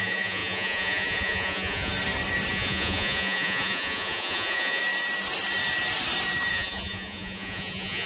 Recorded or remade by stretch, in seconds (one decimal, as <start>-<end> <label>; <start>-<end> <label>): 0.0-1.9 remade; 1.9-2.5 recorded; 2.5-4.8 remade; 4.8-6.5 recorded; 6.5-8.1 remade